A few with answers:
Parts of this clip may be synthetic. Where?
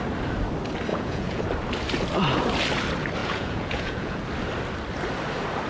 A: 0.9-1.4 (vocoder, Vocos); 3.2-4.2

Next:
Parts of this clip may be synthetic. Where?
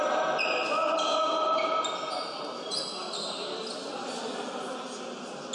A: none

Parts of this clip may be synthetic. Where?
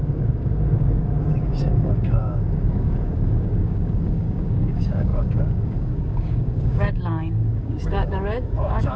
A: 0.0-9.0 (codec, DAC)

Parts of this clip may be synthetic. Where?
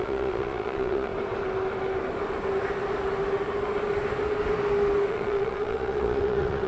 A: 0.0-1.1 (vocoder, Vocos); 5.1-6.7